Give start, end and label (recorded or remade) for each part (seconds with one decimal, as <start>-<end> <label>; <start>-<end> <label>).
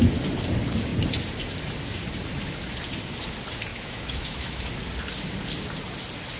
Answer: 0.0-3.7 recorded; 3.7-4.7 remade; 4.7-6.4 recorded